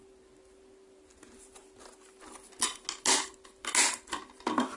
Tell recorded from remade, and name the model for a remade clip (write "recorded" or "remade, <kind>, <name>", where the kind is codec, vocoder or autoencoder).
recorded